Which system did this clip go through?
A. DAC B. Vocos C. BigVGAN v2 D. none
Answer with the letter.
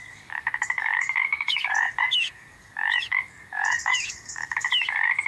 A